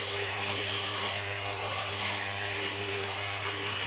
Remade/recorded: remade